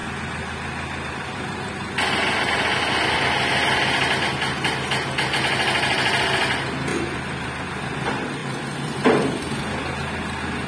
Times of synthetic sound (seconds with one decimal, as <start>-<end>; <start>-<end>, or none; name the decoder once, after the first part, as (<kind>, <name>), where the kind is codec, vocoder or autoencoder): 6.9-7.7 (vocoder, BigVGAN v2); 8.4-9.6